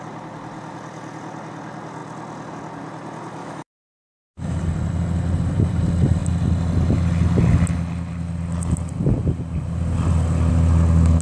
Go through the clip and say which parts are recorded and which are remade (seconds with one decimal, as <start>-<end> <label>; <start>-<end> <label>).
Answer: 0.0-3.4 recorded; 3.4-4.6 remade; 4.6-11.2 recorded